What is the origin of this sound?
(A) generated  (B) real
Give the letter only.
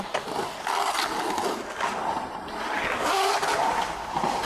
B